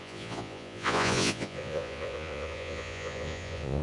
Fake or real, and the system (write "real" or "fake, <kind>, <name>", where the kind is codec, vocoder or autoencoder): fake, vocoder, Vocos